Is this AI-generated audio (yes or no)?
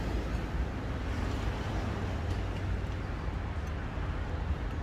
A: no